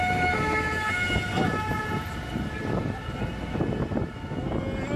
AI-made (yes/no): no